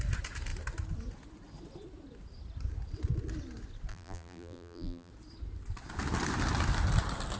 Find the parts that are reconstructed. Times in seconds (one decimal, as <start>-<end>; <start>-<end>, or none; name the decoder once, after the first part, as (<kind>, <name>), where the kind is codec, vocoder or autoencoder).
3.9-5.1 (vocoder, BigVGAN v2)

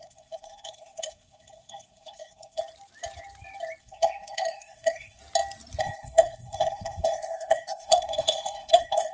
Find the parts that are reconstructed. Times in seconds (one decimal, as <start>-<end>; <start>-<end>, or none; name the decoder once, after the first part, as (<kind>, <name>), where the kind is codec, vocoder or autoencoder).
0.0-2.6 (codec, SNAC); 3.8-5.2; 5.8-9.1

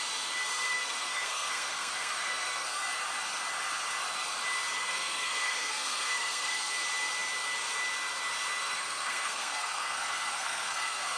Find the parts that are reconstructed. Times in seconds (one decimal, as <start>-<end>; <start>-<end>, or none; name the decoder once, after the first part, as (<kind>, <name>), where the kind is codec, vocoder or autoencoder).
0.5-2.9 (codec, SNAC); 4.8-6.7; 8.6-11.2

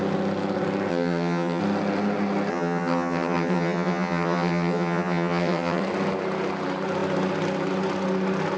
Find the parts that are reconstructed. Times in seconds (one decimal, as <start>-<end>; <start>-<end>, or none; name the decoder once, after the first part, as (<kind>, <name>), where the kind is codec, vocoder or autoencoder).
0.9-1.6 (vocoder, HiFi-GAN); 2.5-5.8